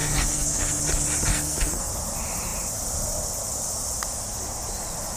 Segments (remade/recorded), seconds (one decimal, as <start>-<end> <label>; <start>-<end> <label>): 0.0-0.8 remade; 0.8-1.3 recorded; 1.3-1.9 remade; 1.9-5.2 recorded